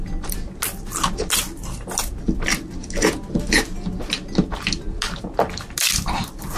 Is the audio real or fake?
real